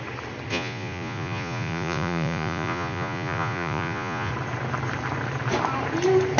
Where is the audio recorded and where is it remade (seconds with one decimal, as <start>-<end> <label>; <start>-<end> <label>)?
0.0-0.5 recorded; 0.5-4.3 remade; 4.3-6.4 recorded